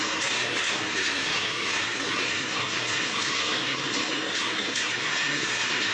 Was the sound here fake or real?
fake